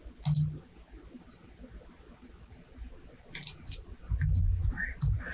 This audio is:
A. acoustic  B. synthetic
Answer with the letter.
A